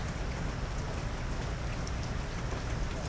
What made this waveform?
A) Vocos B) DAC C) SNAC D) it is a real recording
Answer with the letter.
D